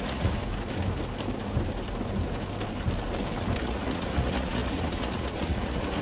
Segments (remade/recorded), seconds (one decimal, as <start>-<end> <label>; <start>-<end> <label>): 0.0-0.4 remade; 0.4-3.6 recorded; 3.6-6.0 remade